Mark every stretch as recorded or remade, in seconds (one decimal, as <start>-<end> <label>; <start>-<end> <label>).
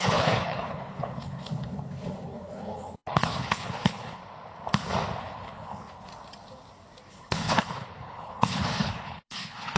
0.0-4.2 remade; 4.2-5.2 recorded; 5.2-6.1 remade; 6.1-7.1 recorded; 7.1-9.8 remade